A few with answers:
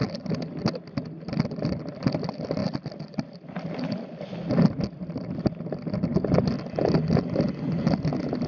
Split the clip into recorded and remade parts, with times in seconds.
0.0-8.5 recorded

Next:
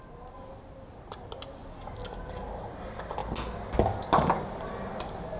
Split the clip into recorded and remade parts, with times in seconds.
0.0-5.4 recorded

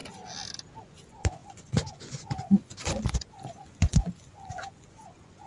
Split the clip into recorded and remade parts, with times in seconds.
0.0-0.8 recorded; 0.8-5.5 remade

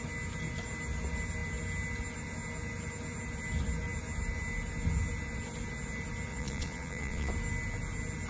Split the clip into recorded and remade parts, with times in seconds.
0.0-6.3 recorded; 6.3-7.3 remade; 7.3-8.3 recorded